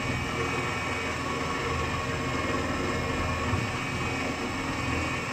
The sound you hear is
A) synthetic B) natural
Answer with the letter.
B